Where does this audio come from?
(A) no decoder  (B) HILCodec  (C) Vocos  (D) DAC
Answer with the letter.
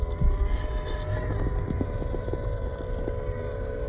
A